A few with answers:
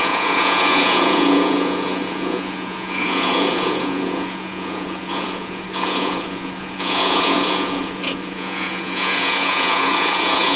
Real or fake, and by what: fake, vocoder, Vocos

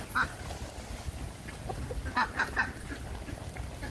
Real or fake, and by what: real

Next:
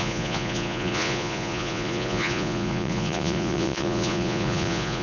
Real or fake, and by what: fake, vocoder, Vocos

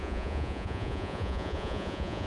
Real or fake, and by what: fake, vocoder, Vocos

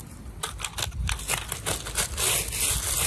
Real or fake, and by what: real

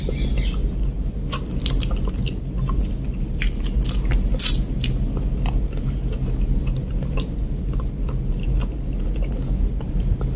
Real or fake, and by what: real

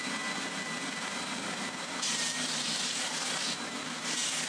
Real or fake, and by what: real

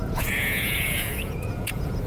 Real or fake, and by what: fake, vocoder, Vocos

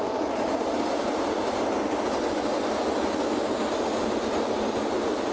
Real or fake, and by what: real